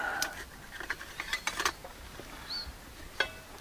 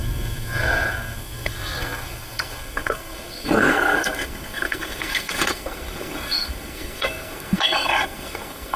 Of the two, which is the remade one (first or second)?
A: second